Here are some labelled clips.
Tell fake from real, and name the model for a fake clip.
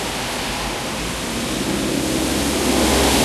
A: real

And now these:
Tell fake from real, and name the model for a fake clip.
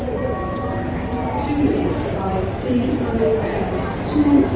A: fake, vocoder, BigVGAN v2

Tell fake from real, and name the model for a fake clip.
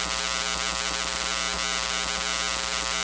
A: real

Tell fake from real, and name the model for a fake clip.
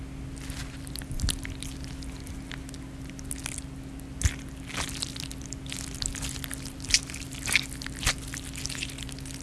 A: real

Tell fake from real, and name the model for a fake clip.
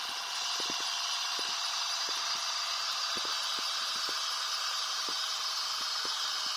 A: real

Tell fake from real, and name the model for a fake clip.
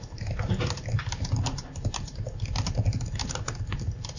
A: real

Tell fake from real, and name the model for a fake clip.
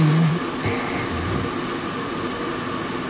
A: real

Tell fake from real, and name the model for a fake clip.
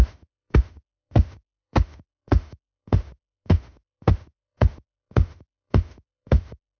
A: fake, autoencoder, DAC-VAE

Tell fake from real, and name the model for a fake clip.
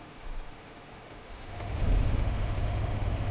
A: fake, autoencoder, DAC-VAE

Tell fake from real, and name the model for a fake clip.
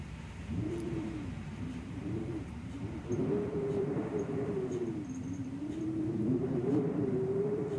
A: fake, vocoder, BigVGAN v2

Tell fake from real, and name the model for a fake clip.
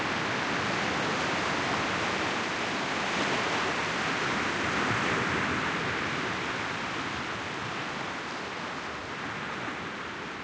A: real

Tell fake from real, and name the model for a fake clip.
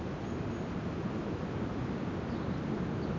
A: real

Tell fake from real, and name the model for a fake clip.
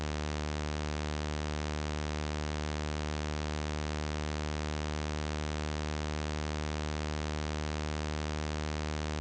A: real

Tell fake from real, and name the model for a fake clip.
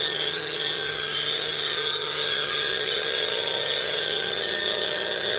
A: fake, vocoder, HiFi-GAN